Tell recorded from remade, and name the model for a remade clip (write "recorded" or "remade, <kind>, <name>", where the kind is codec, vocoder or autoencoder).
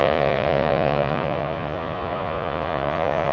remade, vocoder, Vocos